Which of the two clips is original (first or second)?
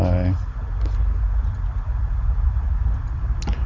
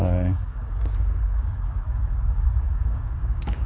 first